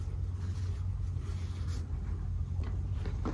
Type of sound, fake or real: real